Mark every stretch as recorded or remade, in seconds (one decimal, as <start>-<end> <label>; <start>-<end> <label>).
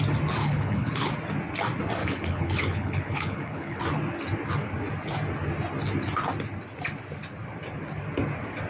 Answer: 0.0-0.4 recorded; 0.4-1.1 remade; 1.1-2.0 recorded; 2.0-3.8 remade; 3.8-8.7 recorded